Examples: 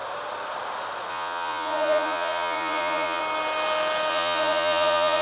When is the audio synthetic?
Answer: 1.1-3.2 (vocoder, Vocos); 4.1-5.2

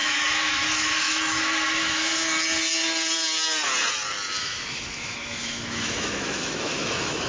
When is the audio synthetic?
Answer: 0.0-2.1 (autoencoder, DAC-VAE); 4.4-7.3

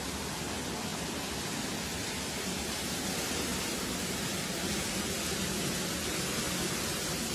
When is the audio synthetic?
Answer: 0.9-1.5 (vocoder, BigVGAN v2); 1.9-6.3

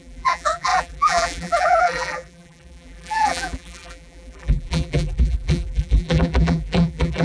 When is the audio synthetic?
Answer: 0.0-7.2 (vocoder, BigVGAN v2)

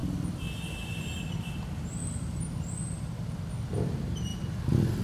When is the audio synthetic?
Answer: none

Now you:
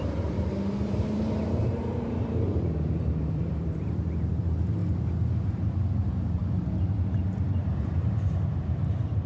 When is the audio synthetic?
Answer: 0.0-4.8 (vocoder, BigVGAN v2); 5.5-6.4; 7.7-9.3